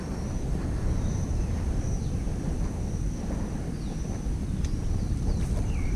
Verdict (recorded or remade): recorded